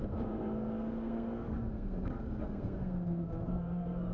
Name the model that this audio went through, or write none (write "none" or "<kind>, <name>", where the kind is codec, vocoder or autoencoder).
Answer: codec, SNAC